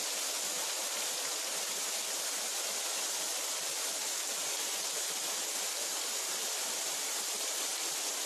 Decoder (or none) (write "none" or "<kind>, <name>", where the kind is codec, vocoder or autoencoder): none